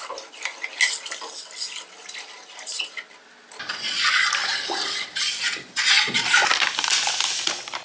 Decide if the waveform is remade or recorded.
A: recorded